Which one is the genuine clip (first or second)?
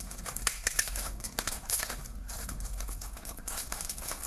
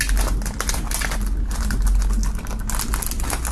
second